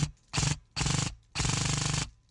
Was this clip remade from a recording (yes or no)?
no